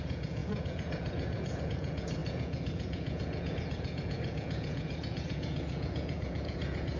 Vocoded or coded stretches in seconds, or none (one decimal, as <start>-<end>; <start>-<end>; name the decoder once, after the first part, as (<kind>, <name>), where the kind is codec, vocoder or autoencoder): 0.0-7.0 (vocoder, Vocos)